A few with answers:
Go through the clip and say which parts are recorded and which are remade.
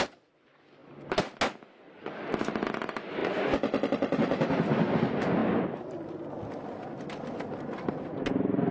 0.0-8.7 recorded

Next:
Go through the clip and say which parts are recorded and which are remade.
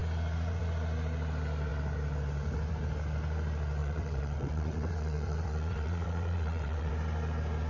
0.0-3.8 recorded; 3.8-6.9 remade; 6.9-7.7 recorded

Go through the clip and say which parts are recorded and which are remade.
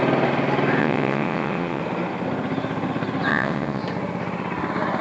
0.0-0.8 recorded; 0.8-1.8 remade; 1.8-3.3 recorded; 3.3-3.8 remade; 3.8-5.0 recorded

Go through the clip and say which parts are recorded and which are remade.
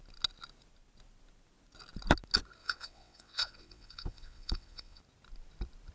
0.0-2.6 recorded; 2.6-5.0 remade; 5.0-5.9 recorded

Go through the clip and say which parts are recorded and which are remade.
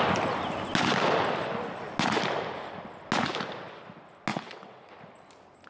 0.0-4.3 recorded; 4.3-4.9 remade; 4.9-5.7 recorded